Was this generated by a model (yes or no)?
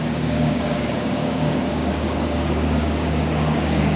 yes